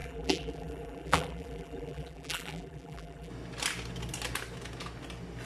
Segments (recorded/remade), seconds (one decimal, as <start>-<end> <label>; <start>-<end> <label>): 0.0-3.3 remade; 3.3-5.5 recorded